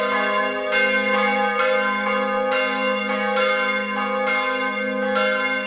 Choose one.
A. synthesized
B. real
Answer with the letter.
B